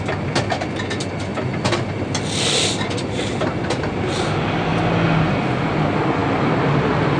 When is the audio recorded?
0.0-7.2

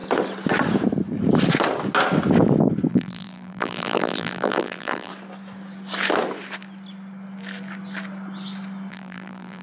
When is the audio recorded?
0.0-2.9; 5.1-8.9

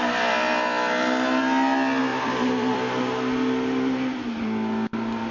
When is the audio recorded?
0.0-2.1; 3.0-5.3

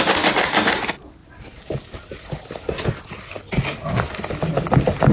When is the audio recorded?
0.0-5.1

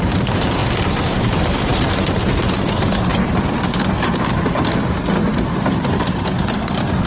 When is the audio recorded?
3.1-7.1

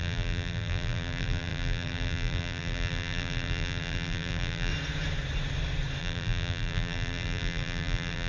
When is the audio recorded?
4.7-6.0

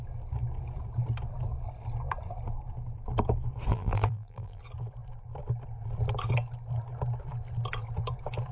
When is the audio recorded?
0.0-3.7; 4.6-8.5